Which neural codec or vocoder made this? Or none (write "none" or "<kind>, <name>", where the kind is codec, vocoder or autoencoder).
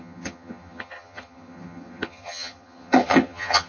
vocoder, HiFi-GAN